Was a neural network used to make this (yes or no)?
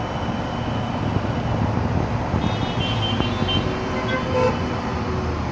no